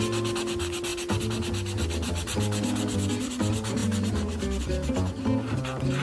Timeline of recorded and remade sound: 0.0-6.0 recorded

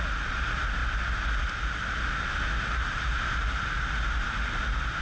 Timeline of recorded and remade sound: 0.0-5.0 recorded

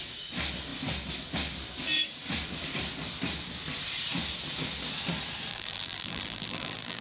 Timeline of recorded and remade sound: 0.0-5.5 recorded; 5.5-7.0 remade

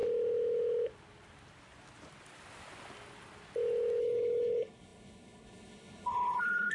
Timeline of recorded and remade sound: 0.0-4.0 recorded; 4.0-6.7 remade

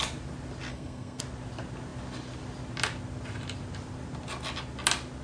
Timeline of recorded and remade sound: 0.0-0.7 recorded; 0.7-1.2 remade; 1.2-5.2 recorded

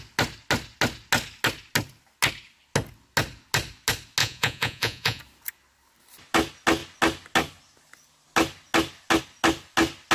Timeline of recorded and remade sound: 0.0-4.2 recorded; 4.2-5.2 remade; 5.2-10.1 recorded

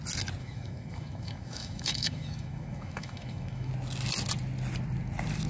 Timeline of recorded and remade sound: 0.0-0.4 recorded; 0.4-3.7 remade; 3.7-5.5 recorded

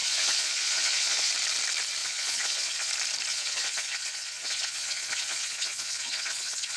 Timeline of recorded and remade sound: 0.0-1.3 remade; 1.3-2.0 recorded; 2.0-2.9 remade; 2.9-3.3 recorded; 3.3-6.8 remade